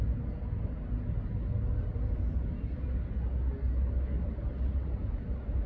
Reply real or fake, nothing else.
real